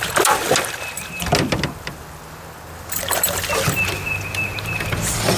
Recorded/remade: recorded